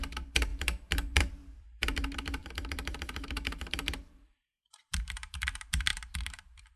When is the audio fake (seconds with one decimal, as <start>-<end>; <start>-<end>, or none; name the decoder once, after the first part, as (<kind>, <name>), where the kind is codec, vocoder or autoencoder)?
0.0-6.8 (vocoder, BigVGAN v2)